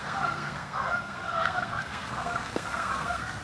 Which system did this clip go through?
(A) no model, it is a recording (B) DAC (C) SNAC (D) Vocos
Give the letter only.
C